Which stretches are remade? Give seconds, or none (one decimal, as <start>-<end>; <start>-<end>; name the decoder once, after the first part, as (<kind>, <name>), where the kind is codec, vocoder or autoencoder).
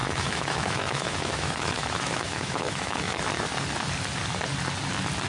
0.0-3.2 (autoencoder, DAC-VAE)